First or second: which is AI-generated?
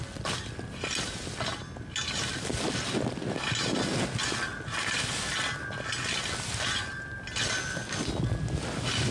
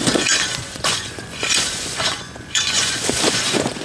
second